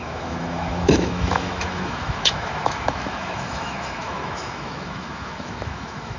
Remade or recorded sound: remade